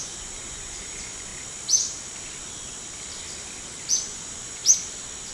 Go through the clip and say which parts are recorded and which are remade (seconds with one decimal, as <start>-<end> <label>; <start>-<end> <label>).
0.0-1.3 remade; 1.3-3.9 recorded; 3.9-4.6 remade; 4.6-5.3 recorded